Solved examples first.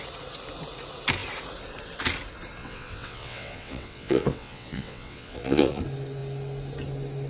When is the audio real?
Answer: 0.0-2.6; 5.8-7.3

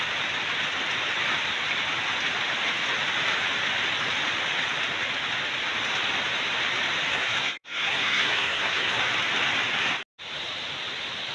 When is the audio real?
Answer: 0.0-7.1; 9.0-11.3